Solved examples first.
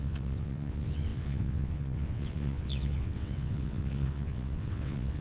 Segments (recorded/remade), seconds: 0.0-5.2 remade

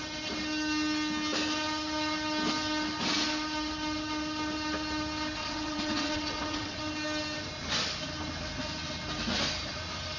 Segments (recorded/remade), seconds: 0.0-5.4 recorded; 5.4-6.8 remade; 6.8-10.2 recorded

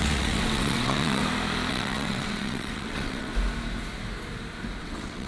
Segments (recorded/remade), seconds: 0.0-1.2 remade; 1.2-1.7 recorded; 1.7-3.3 remade; 3.3-4.8 recorded; 4.8-5.3 remade

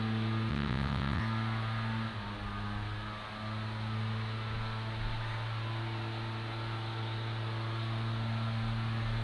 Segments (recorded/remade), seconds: 0.0-0.5 recorded; 0.5-1.2 remade; 1.2-9.2 recorded

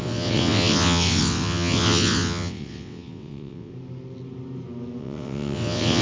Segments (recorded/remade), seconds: 0.0-3.7 remade; 3.7-5.0 recorded; 5.0-6.0 remade

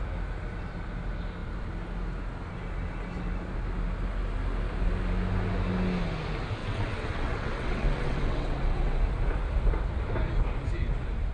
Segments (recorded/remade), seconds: 0.0-6.6 recorded; 6.6-9.0 remade; 9.0-11.3 recorded

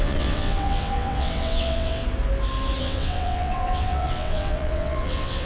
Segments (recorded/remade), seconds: 0.0-2.0 remade; 2.0-2.8 recorded; 2.8-5.4 remade